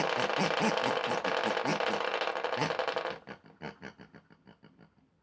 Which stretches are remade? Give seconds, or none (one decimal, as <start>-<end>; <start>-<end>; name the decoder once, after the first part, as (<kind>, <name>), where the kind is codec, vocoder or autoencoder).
none

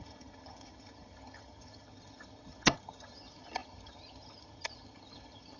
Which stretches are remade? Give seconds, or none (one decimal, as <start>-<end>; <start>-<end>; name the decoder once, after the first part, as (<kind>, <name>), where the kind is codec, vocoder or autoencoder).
0.0-5.6 (vocoder, HiFi-GAN)

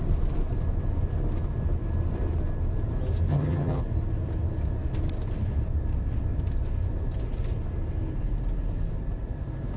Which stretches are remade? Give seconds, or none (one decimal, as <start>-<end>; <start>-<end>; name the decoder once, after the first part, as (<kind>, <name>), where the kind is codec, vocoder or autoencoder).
3.3-3.8 (vocoder, HiFi-GAN)

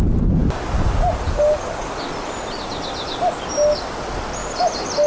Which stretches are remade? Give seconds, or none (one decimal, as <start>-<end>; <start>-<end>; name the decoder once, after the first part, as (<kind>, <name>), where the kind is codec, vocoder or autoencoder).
none

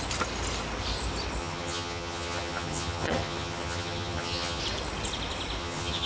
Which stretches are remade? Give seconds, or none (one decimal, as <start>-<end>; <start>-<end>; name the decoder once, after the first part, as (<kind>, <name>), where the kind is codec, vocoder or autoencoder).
1.4-4.6 (vocoder, HiFi-GAN); 5.6-6.1